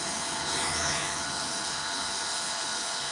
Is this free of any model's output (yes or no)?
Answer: no